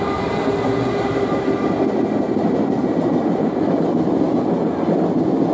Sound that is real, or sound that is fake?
real